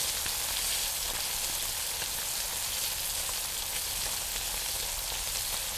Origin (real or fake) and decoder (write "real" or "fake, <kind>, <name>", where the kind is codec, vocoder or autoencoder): real